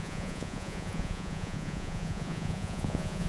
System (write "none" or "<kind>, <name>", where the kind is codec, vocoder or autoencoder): vocoder, Vocos